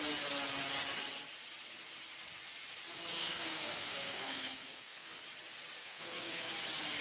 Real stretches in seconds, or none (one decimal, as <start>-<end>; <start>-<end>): 0.0-3.2; 5.2-5.8; 6.5-7.0